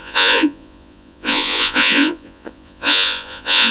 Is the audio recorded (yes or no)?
no